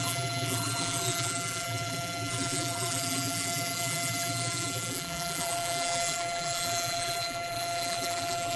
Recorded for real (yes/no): no